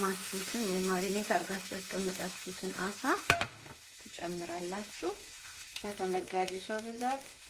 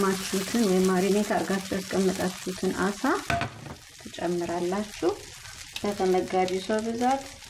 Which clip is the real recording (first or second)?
second